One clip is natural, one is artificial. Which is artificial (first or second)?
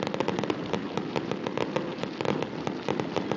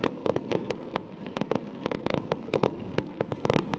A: second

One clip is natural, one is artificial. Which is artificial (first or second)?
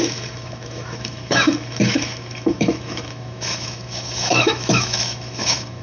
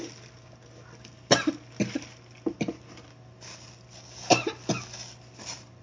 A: first